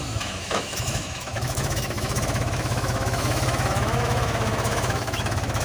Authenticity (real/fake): fake